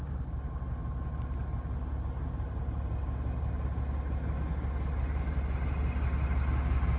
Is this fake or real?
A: real